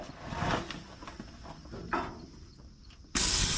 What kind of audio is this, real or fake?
real